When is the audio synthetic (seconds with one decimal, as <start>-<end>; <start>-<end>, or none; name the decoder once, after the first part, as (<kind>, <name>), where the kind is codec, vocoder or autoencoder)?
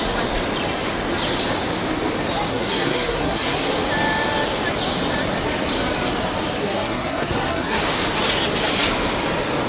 2.5-3.7 (codec, SNAC); 6.6-7.8